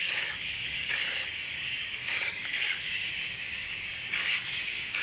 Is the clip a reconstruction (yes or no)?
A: yes